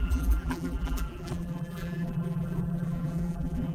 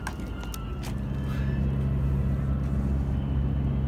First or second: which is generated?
first